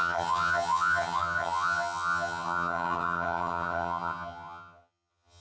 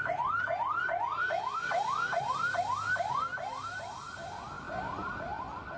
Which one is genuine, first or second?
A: second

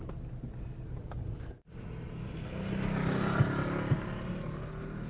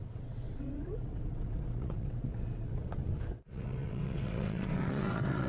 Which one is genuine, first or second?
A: first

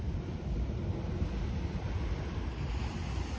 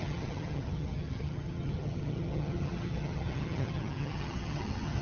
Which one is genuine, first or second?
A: first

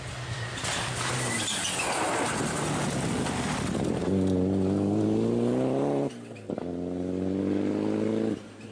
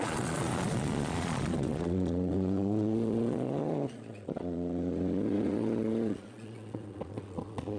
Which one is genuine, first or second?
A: first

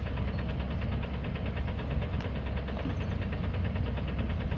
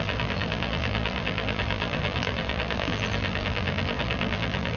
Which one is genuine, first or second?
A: first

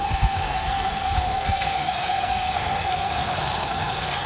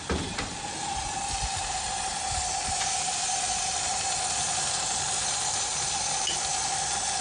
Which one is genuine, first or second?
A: second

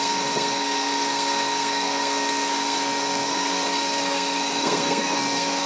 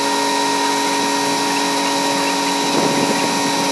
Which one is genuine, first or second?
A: second